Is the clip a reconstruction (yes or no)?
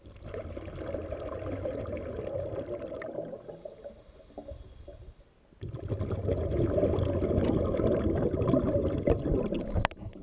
no